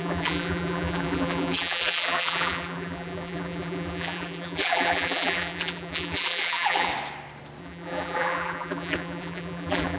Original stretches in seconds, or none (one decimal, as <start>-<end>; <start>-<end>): 6.9-7.6